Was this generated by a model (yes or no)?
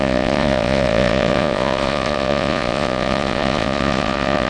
yes